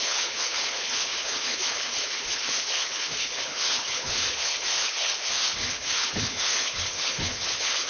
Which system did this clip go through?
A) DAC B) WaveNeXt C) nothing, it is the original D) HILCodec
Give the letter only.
D